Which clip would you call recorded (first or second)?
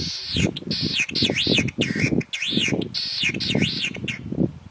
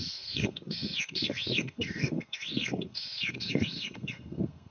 first